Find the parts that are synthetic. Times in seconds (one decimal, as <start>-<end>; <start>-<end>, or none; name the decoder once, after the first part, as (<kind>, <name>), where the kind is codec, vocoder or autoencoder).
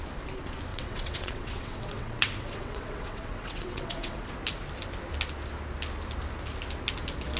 0.7-4.2 (vocoder, WaveNeXt)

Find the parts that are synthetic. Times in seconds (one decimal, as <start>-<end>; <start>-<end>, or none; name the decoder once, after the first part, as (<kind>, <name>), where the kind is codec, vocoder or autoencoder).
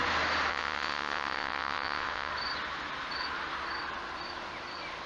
0.5-2.3 (vocoder, WaveNeXt)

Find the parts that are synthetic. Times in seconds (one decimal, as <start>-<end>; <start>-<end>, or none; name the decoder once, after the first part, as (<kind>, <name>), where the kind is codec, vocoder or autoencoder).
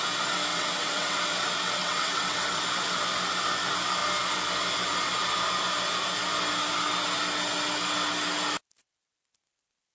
0.5-1.2 (vocoder, WaveNeXt); 1.8-2.6